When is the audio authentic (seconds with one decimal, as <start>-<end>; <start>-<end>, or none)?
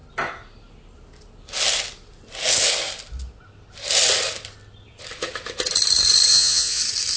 0.0-6.3; 6.8-7.2